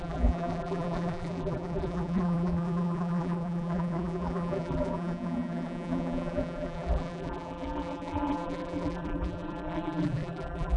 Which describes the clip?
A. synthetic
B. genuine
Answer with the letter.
A